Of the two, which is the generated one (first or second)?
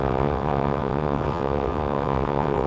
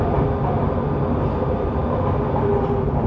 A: first